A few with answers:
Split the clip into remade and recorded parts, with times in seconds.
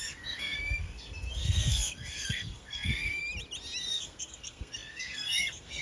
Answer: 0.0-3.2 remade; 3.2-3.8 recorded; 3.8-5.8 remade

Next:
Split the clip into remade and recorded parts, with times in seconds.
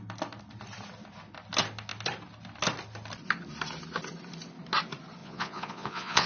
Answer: 0.0-5.2 recorded; 5.2-6.3 remade